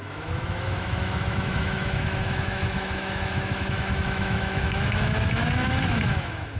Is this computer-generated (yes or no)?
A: yes